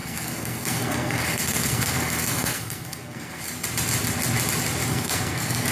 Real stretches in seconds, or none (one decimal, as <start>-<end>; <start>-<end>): 3.4-4.9